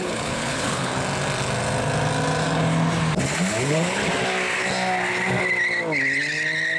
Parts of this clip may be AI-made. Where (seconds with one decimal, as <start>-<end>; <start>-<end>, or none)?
0.0-0.9; 3.6-4.0